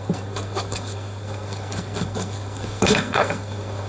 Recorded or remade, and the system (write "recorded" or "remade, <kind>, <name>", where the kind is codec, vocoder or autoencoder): remade, codec, SNAC